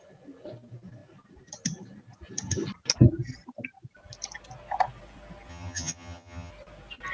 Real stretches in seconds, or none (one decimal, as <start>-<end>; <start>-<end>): 0.0-5.5; 6.5-7.1